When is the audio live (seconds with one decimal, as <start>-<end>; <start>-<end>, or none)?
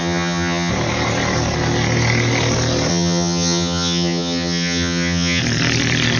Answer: 0.7-2.9; 5.4-6.2